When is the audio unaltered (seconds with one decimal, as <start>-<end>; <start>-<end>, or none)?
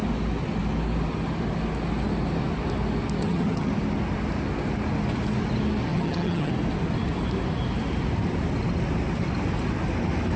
0.0-3.2; 3.7-5.9; 6.5-10.4